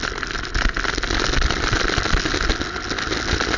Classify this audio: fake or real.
real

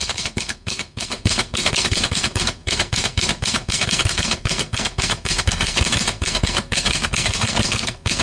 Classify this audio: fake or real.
fake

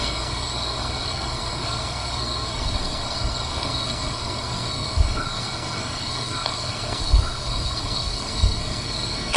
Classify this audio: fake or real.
fake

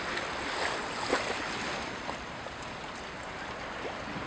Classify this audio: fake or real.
real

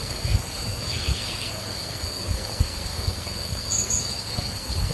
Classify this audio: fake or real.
fake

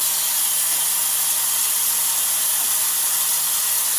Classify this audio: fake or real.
real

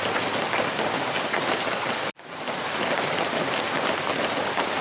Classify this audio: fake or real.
real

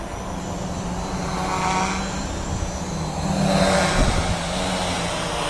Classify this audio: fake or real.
real